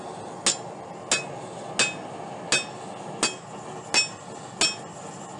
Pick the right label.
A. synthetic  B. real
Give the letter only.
B